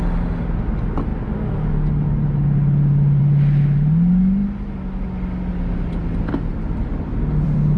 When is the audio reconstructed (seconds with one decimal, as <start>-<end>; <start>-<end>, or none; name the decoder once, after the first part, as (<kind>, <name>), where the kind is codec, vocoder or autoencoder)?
6.5-7.8 (vocoder, BigVGAN v2)